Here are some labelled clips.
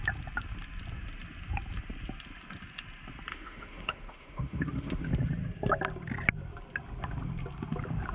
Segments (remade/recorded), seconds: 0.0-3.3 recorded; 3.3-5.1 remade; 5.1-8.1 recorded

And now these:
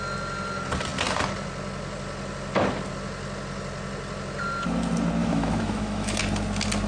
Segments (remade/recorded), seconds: 0.0-5.2 recorded; 5.2-6.2 remade; 6.2-6.9 recorded

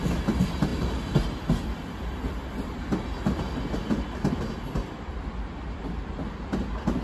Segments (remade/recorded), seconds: 0.0-7.0 recorded

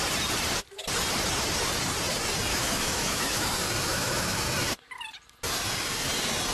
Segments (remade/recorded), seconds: 0.0-2.5 recorded; 2.5-3.5 remade; 3.5-3.9 recorded; 3.9-4.4 remade; 4.4-6.5 recorded

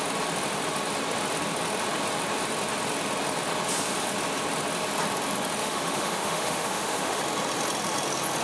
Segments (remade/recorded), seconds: 0.0-5.6 recorded; 5.6-7.2 remade; 7.2-8.4 recorded